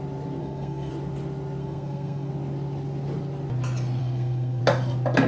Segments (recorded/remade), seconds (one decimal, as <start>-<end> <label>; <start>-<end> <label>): 0.0-0.4 recorded; 0.4-0.9 remade; 0.9-1.6 recorded; 1.6-2.3 remade; 2.3-4.0 recorded; 4.0-4.6 remade; 4.6-5.3 recorded

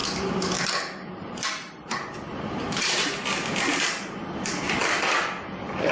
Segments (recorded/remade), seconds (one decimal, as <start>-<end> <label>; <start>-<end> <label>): 0.0-5.9 recorded

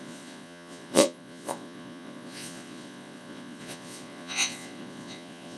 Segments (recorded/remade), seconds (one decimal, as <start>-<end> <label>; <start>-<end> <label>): 0.0-5.6 remade

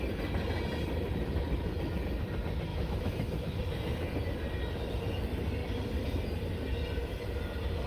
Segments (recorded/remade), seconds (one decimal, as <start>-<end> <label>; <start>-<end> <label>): 0.0-2.7 recorded; 2.7-3.6 remade; 3.6-7.9 recorded

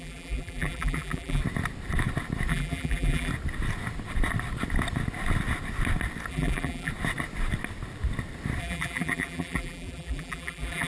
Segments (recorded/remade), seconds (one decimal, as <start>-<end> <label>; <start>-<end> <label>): 0.0-1.4 remade; 1.4-2.5 recorded; 2.5-3.3 remade; 3.3-6.3 recorded; 6.3-6.9 remade; 6.9-8.6 recorded; 8.6-10.9 remade

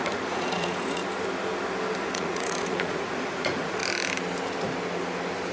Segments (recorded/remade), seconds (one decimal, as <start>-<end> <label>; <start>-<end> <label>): 0.0-1.0 remade; 1.0-2.0 recorded; 2.0-3.8 remade; 3.8-5.5 recorded

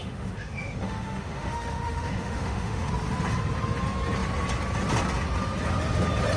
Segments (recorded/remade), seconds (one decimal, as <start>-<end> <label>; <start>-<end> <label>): 0.0-2.9 remade; 2.9-6.4 recorded

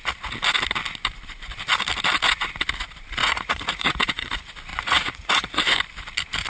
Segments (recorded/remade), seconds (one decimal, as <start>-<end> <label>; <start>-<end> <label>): 0.0-3.2 recorded; 3.2-4.3 remade; 4.3-4.7 recorded; 4.7-5.6 remade; 5.6-6.5 recorded